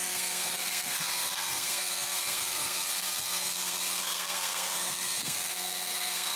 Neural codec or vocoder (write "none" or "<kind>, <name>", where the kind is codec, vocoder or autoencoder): codec, SNAC